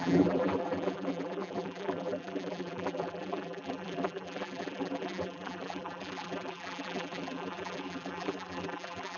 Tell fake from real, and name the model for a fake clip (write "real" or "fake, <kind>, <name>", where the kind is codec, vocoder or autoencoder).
fake, vocoder, BigVGAN v2